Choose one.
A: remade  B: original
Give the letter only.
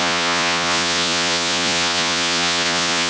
A